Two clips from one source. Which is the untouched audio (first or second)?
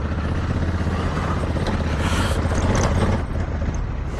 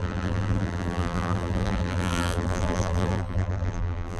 first